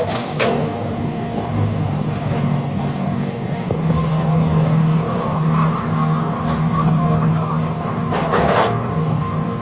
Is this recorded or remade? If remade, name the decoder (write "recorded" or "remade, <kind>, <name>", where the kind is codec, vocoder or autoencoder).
remade, codec, DAC